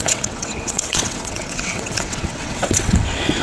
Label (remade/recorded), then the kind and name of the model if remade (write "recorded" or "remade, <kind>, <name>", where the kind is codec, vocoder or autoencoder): remade, vocoder, WaveNeXt